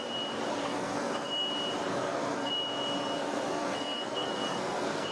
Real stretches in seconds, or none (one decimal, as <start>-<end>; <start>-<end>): 0.0-0.5; 1.5-1.9; 2.5-3.2